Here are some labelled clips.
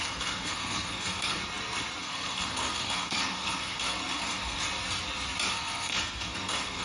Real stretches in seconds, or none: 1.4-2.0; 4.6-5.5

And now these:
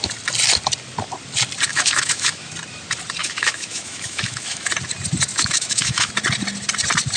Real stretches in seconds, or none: 0.0-1.7; 2.5-3.2; 4.7-5.3; 6.1-7.2

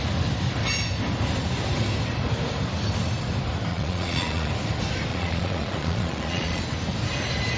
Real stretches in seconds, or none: 0.0-3.7; 4.5-5.1; 6.6-7.6